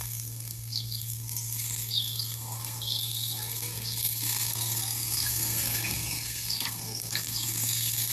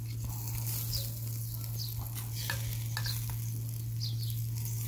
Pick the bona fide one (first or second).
second